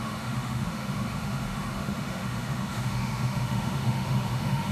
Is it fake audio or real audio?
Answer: fake